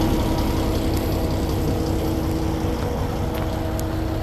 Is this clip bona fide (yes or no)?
yes